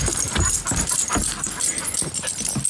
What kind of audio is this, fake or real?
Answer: real